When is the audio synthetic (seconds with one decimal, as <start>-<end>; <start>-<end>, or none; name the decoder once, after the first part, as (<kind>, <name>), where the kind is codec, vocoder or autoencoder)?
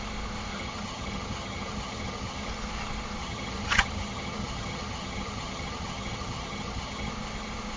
0.5-2.5 (vocoder, HiFi-GAN); 3.2-7.1